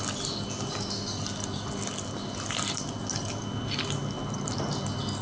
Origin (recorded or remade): recorded